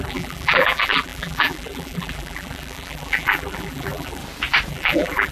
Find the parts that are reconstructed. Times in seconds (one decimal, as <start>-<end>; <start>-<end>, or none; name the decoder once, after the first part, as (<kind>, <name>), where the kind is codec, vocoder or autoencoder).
0.0-4.2 (vocoder, BigVGAN v2); 4.7-5.3